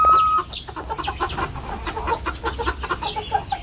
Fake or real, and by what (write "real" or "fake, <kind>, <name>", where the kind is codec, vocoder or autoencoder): real